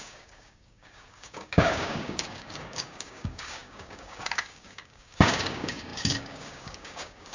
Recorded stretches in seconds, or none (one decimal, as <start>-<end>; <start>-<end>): none